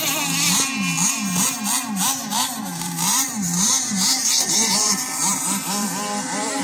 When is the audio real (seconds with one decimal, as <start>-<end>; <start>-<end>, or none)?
0.0-2.3